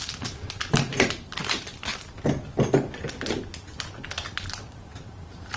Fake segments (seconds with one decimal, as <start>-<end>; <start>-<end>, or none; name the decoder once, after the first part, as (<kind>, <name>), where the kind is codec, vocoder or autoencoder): 0.0-1.9 (vocoder, BigVGAN v2); 4.7-5.6